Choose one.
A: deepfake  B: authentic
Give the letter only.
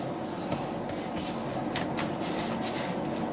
B